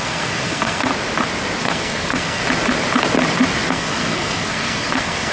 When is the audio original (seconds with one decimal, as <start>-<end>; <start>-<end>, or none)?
0.9-1.6; 2.4-3.7